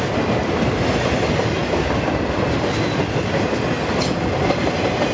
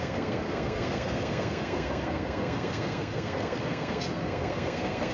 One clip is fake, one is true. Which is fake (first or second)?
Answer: second